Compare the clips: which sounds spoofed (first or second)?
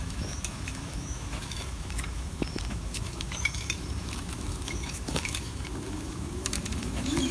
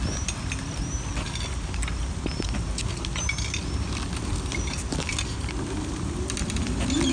first